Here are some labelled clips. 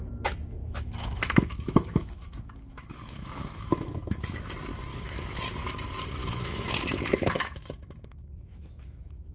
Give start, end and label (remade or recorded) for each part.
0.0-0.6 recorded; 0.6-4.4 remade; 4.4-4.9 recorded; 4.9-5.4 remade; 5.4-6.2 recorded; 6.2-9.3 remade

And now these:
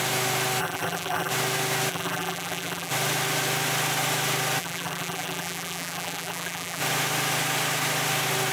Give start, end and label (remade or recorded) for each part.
0.0-0.6 recorded; 0.6-1.3 remade; 1.3-1.9 recorded; 1.9-2.9 remade; 2.9-4.6 recorded; 4.6-6.8 remade; 6.8-8.5 recorded